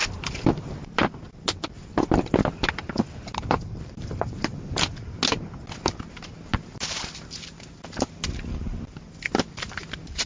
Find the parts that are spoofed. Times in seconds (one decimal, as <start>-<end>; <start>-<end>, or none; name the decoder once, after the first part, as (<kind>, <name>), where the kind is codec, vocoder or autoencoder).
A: none